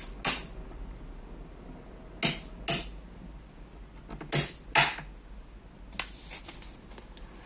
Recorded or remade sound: recorded